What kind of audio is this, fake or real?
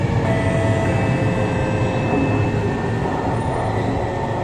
real